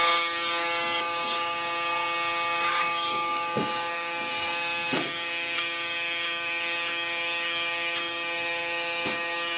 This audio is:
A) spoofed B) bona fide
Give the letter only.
A